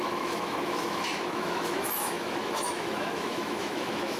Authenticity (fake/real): fake